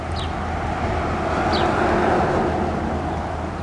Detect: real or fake real